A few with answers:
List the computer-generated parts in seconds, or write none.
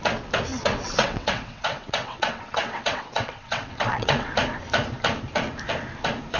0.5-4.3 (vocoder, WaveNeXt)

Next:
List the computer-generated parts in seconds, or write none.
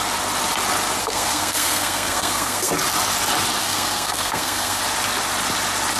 1.0-2.7 (codec, SNAC); 3.6-4.8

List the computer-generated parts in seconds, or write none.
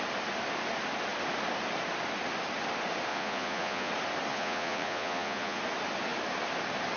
3.1-3.9 (vocoder, Vocos); 4.3-5.6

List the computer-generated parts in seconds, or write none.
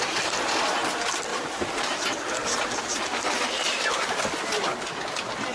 1.3-1.8 (vocoder, BigVGAN v2); 2.4-3.8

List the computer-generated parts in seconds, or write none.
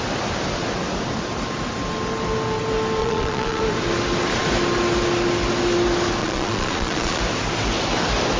3.0-3.6 (vocoder, Vocos); 6.2-7.2